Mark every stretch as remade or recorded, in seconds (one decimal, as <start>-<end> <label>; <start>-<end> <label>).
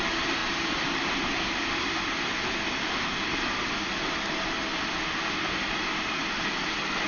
0.0-0.4 recorded; 0.4-1.4 remade; 1.4-7.1 recorded